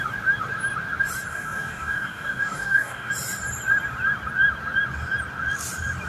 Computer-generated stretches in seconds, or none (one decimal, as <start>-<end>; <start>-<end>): 1.3-3.1